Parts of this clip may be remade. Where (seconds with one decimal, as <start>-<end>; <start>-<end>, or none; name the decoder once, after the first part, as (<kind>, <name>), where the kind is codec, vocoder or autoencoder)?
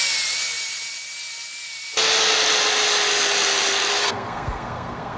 4.0-5.2 (codec, SNAC)